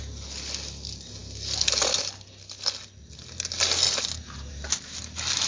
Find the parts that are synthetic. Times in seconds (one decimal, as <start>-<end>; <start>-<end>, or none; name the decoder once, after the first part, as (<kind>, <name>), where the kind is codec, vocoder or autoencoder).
none